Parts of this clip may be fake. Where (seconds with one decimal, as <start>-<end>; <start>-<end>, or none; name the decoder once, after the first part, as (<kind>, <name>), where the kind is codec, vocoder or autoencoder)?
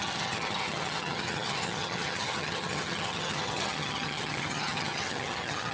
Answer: 0.0-5.7 (vocoder, HiFi-GAN)